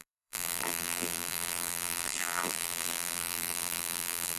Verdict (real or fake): fake